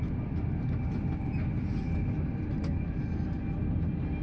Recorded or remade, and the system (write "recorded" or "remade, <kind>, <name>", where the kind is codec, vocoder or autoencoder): recorded